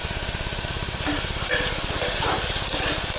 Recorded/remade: remade